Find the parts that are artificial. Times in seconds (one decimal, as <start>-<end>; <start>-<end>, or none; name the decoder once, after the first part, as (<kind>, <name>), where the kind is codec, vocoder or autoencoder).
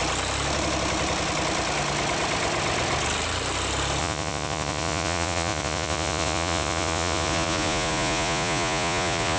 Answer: 4.0-9.4 (vocoder, Vocos)